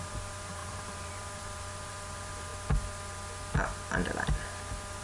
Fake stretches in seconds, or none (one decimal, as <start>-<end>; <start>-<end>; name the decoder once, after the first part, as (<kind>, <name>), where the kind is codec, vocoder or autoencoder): 0.0-2.5 (vocoder, BigVGAN v2)